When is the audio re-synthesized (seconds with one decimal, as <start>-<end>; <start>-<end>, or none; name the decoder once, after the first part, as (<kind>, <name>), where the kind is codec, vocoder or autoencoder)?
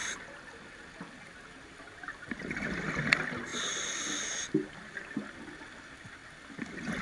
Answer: none